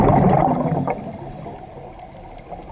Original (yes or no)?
yes